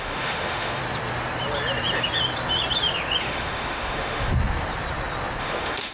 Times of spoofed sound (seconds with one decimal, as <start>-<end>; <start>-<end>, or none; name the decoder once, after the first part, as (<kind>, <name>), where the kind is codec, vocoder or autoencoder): 0.0-0.8 (autoencoder, DAC-VAE); 3.2-4.3; 5.4-5.9